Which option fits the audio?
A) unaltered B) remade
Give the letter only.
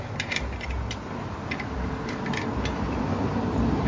A